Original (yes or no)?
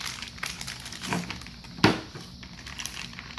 yes